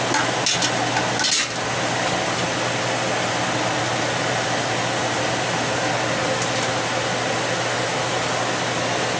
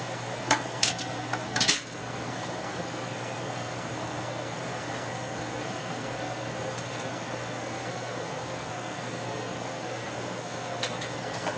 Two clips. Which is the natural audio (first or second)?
first